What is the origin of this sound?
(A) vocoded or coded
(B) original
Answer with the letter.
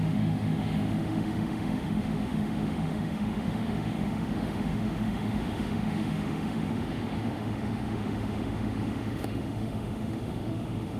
A